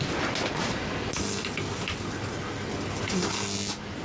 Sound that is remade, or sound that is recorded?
recorded